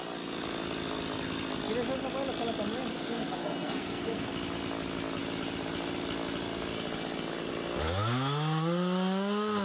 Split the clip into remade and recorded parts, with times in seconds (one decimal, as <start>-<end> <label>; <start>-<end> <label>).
0.0-2.9 recorded; 2.9-4.3 remade; 4.3-9.6 recorded